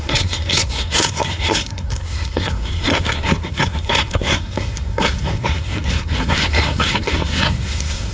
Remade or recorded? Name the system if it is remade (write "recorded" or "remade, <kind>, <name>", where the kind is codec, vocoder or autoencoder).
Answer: remade, codec, SNAC